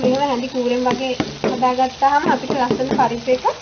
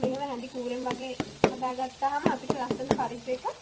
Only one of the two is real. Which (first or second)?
first